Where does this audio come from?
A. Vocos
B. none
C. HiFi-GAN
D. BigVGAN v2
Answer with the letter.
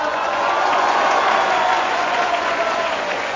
A